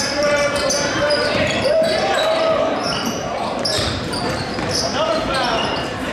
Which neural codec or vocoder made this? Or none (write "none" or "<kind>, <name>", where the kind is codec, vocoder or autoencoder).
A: vocoder, BigVGAN v2